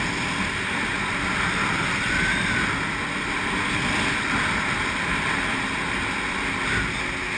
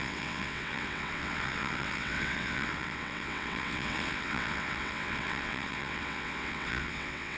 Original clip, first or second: first